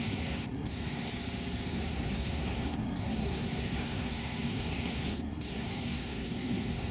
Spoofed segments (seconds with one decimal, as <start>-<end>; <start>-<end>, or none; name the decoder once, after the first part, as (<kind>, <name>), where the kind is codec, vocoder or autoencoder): 0.0-1.1 (codec, SNAC); 1.7-6.9